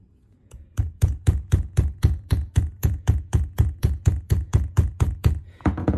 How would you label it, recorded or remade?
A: remade